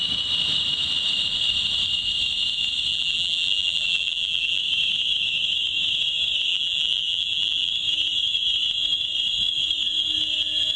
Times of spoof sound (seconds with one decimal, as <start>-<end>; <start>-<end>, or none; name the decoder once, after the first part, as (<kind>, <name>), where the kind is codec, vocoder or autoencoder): 2.9-4.6 (vocoder, BigVGAN v2); 6.5-7.7